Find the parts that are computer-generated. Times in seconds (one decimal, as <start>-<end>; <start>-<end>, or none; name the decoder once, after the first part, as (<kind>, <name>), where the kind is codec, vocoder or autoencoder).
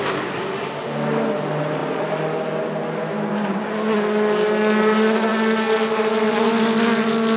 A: none